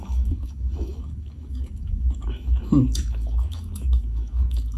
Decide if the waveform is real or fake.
fake